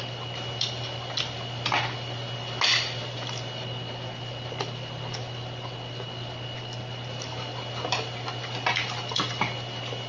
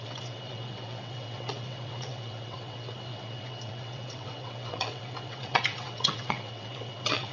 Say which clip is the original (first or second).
first